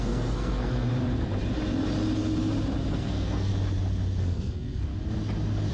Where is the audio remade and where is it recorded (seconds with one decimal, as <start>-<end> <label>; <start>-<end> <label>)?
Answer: 0.0-0.9 remade; 0.9-2.9 recorded; 2.9-3.5 remade; 3.5-4.2 recorded; 4.2-4.9 remade; 4.9-5.7 recorded